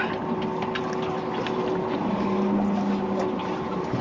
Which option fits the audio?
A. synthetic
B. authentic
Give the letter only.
B